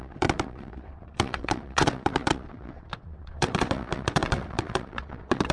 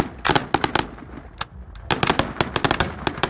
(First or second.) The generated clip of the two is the first